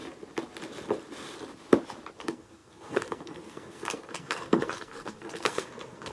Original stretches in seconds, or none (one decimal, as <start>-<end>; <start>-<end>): 0.0-2.2